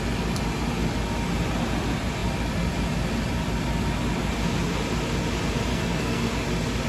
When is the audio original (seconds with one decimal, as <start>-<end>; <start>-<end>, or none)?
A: 0.0-5.7; 6.3-6.9